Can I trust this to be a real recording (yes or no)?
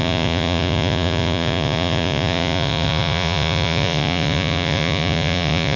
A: no